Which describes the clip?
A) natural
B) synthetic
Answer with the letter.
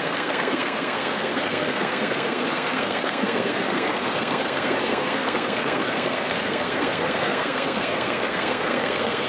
B